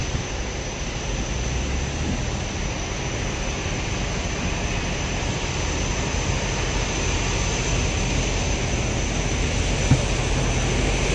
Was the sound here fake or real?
real